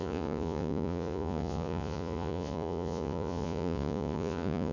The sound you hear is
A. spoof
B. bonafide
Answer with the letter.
A